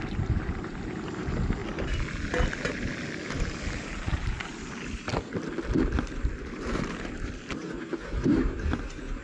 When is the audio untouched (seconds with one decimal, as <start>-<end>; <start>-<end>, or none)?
1.6-3.3; 5.1-6.4